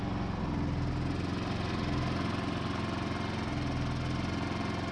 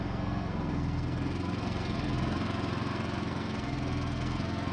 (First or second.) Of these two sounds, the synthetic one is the second